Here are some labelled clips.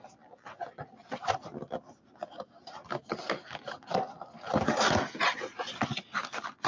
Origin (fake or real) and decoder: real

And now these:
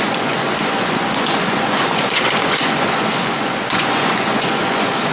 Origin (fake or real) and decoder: fake, vocoder, Vocos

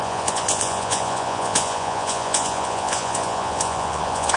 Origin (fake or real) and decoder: fake, vocoder, Vocos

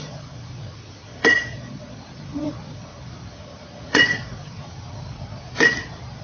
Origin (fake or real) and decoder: fake, vocoder, Vocos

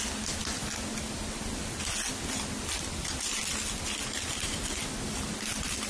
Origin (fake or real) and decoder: real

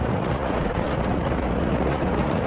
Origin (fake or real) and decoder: fake, vocoder, Vocos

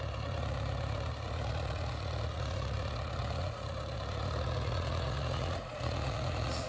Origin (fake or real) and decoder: fake, vocoder, Vocos